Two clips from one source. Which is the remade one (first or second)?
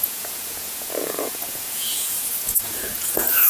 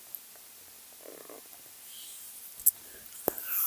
first